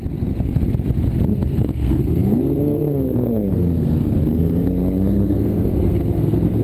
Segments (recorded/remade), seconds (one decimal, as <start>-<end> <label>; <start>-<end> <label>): 0.0-0.6 remade; 0.6-1.3 recorded; 1.3-6.6 remade